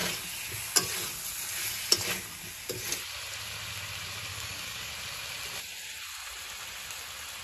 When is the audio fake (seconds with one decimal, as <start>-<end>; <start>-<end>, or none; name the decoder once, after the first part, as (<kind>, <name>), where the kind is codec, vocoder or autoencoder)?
4.3-4.9 (codec, DAC)